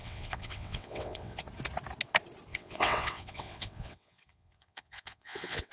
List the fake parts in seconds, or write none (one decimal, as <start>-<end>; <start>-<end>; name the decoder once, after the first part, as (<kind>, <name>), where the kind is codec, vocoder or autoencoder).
0.0-1.4 (vocoder, WaveNeXt); 2.5-5.7